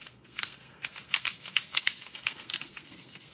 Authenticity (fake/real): fake